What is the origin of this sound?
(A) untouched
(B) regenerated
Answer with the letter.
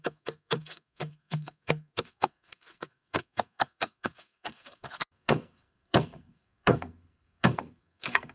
B